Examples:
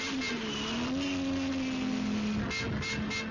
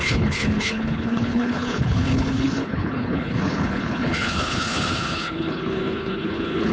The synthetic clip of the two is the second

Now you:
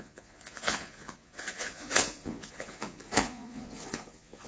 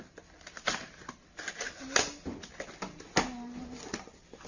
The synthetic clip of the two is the first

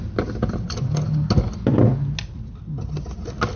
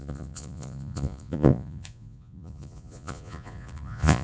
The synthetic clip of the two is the second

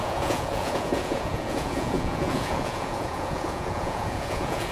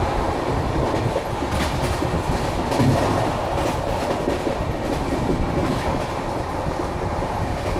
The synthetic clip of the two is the first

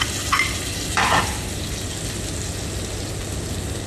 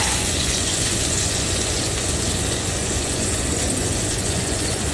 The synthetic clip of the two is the second